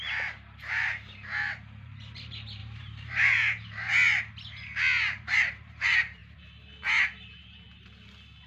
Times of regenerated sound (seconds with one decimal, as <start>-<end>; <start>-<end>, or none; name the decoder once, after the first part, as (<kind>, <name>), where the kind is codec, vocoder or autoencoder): 0.0-3.9 (vocoder, BigVGAN v2); 5.0-6.2